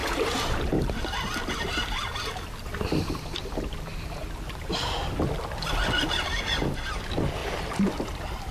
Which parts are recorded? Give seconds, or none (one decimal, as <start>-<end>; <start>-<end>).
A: 1.4-7.4; 7.9-8.5